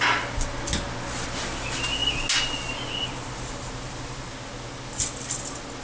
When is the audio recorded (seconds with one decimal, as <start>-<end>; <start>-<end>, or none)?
0.0-5.8